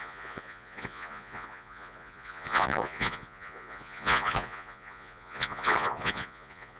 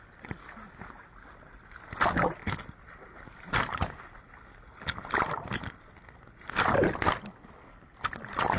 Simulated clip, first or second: first